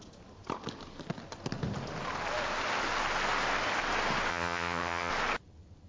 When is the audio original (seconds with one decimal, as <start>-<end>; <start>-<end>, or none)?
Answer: 0.0-4.3; 5.1-5.9